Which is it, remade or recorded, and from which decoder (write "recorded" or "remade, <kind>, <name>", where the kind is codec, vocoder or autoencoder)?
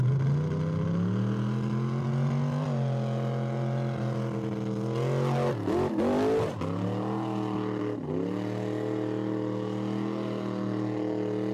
recorded